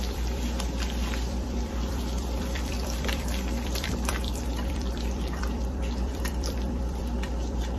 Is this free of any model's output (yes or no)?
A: no